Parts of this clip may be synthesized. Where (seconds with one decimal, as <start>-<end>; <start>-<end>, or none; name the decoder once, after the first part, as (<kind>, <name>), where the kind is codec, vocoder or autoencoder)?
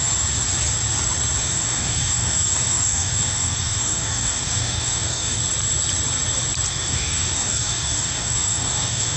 1.4-5.4 (codec, DAC); 6.7-9.2